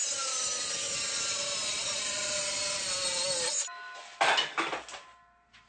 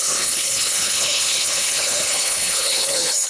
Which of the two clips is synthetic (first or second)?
second